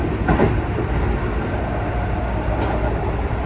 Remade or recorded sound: recorded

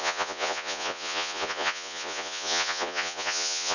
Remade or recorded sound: remade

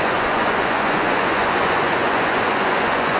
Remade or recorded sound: remade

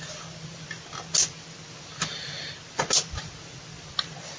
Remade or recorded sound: recorded